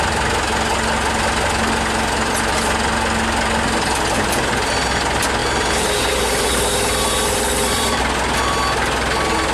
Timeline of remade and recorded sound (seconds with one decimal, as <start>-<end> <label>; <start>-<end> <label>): 0.0-5.4 recorded; 5.4-8.0 remade; 8.0-9.5 recorded